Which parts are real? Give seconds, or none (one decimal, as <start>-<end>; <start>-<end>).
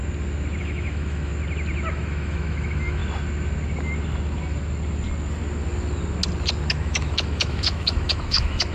0.0-0.6; 1.3-1.9; 3.0-6.7